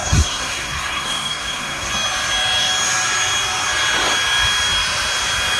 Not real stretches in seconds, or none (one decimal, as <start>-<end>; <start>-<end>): 0.0-1.9